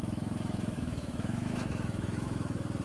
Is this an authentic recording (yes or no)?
no